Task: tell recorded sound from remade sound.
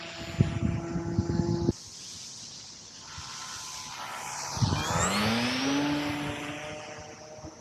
recorded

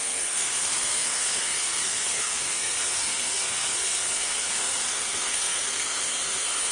remade